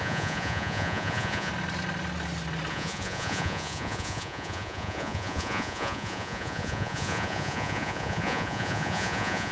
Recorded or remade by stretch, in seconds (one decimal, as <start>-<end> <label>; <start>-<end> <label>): 0.0-1.5 remade; 1.5-2.7 recorded; 2.7-9.5 remade